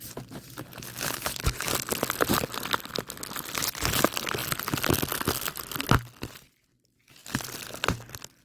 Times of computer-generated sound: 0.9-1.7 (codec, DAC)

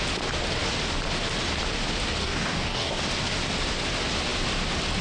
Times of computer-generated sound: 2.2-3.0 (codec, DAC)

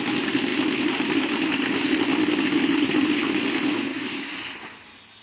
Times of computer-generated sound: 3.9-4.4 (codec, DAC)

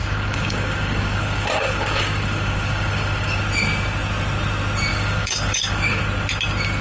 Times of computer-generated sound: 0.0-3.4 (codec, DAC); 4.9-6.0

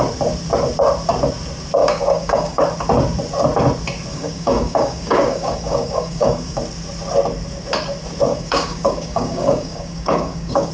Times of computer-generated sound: 1.8-2.6 (codec, DAC); 4.1-6.6; 8.3-10.7